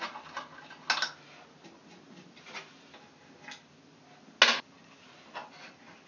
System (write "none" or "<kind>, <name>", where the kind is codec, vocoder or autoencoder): none